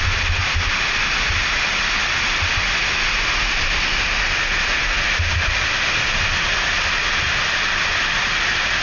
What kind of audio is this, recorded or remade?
recorded